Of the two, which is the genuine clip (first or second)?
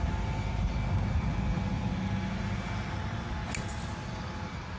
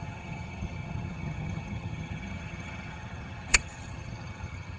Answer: first